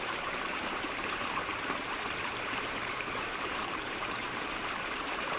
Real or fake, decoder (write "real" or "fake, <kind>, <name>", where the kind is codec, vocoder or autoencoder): fake, vocoder, BigVGAN v2